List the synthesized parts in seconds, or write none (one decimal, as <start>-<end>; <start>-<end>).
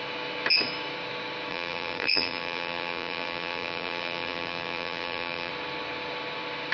1.5-5.5